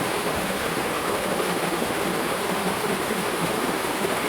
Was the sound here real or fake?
fake